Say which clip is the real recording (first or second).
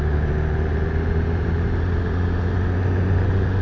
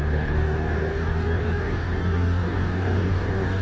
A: first